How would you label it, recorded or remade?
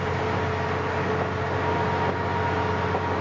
recorded